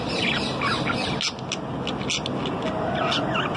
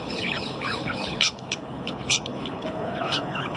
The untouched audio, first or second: first